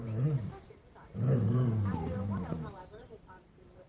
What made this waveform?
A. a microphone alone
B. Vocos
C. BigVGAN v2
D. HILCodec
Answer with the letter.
C